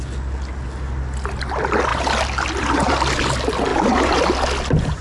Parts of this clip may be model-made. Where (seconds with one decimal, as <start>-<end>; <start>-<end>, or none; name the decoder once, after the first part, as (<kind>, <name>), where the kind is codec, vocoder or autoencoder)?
none